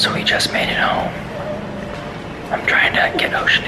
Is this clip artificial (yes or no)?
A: no